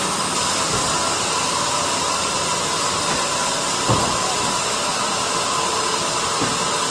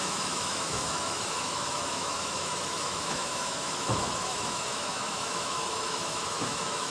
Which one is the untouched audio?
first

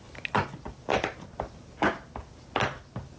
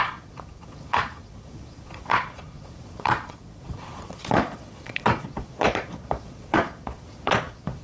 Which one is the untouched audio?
first